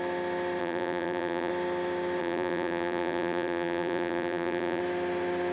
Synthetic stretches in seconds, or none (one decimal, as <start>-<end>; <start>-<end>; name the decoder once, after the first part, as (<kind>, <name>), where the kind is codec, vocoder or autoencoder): 0.6-1.5 (vocoder, BigVGAN v2); 2.2-4.8